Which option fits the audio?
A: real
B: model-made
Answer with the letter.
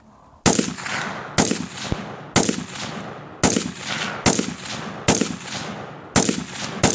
A